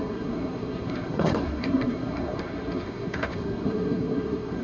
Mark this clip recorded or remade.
remade